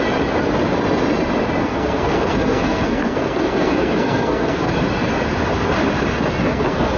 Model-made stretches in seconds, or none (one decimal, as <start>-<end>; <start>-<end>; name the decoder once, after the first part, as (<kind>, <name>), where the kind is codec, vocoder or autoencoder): 1.6-4.7 (codec, SNAC); 6.4-7.0